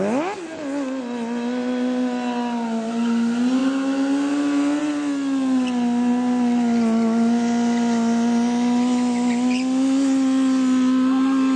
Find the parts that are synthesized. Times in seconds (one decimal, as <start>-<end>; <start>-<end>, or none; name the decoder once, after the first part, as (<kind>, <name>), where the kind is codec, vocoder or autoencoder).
none